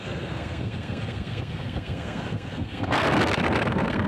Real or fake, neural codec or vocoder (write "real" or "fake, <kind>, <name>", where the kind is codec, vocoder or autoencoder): fake, codec, SNAC